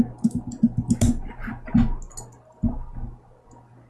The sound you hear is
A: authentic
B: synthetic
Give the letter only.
A